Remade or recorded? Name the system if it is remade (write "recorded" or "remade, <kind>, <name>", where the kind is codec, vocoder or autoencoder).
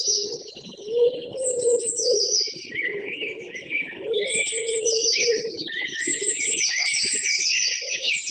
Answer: remade, codec, HILCodec